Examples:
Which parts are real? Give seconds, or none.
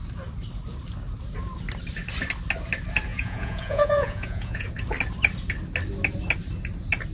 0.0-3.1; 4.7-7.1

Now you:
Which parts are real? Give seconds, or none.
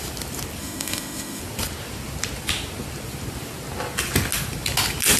0.0-0.6; 1.4-5.2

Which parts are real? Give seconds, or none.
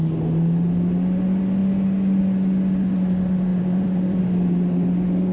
0.0-3.5; 4.2-5.3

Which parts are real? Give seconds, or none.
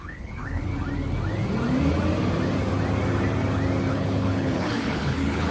0.7-3.9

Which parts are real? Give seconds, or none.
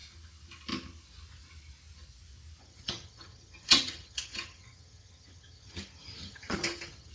0.0-2.6